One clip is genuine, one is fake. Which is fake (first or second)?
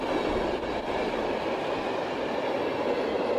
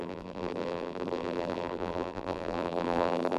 second